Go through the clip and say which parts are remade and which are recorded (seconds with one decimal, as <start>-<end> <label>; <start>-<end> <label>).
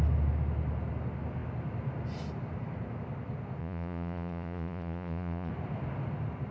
0.0-3.6 recorded; 3.6-5.5 remade; 5.5-6.5 recorded